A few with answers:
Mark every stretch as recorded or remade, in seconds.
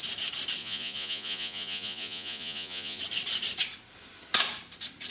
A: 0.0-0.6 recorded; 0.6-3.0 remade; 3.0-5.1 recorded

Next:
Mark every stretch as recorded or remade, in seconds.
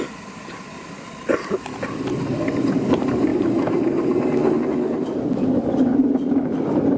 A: 0.0-7.0 recorded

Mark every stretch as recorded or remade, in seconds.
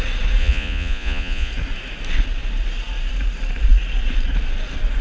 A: 0.0-0.4 recorded; 0.4-1.5 remade; 1.5-5.0 recorded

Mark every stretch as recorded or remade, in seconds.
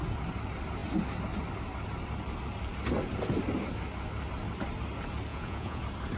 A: 0.0-5.3 recorded; 5.3-5.8 remade; 5.8-6.2 recorded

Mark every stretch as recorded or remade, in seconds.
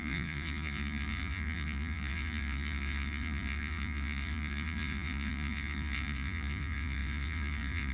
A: 0.0-7.9 remade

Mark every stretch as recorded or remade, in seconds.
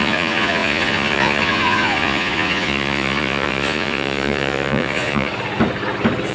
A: 0.0-5.3 remade; 5.3-6.3 recorded